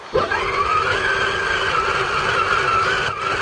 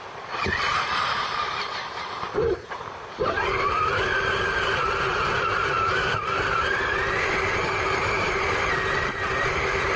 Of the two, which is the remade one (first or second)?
second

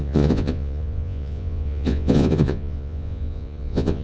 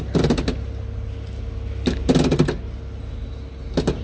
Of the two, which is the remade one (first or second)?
first